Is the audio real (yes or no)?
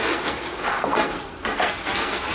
no